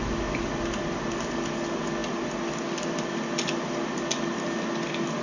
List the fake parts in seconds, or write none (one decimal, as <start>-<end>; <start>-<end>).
none